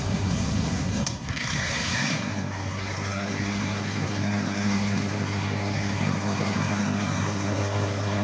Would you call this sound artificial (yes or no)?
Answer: yes